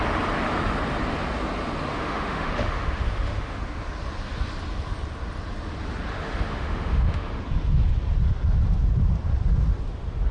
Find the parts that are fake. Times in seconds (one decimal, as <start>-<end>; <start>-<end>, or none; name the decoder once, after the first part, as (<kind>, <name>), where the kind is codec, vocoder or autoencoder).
1.9-3.6 (autoencoder, DAC-VAE); 6.1-7.4